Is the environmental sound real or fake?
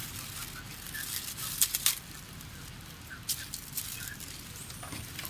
fake